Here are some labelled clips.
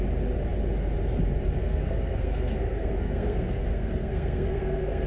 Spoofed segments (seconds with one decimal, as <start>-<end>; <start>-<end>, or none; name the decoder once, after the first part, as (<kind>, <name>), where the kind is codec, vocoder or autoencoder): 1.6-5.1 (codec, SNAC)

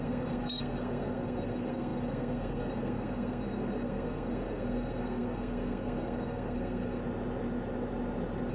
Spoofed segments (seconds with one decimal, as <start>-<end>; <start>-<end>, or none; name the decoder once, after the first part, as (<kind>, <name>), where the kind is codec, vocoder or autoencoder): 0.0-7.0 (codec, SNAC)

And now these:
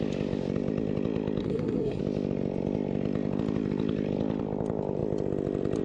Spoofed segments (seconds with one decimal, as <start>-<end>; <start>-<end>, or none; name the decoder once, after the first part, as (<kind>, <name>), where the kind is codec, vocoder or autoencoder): 1.4-2.0 (codec, SNAC)

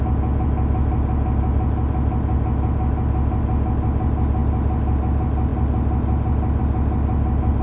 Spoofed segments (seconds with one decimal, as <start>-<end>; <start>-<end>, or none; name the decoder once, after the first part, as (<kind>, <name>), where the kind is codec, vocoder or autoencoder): none

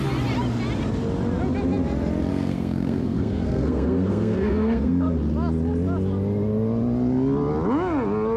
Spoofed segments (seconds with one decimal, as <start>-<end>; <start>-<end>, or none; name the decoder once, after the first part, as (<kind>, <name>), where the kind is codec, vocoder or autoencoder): 2.3-5.2 (codec, SNAC)

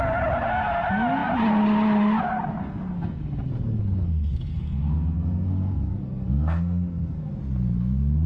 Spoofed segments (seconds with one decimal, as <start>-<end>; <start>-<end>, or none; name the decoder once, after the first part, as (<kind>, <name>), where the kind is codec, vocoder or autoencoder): 2.6-7.3 (codec, SNAC)